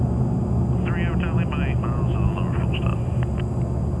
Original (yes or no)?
yes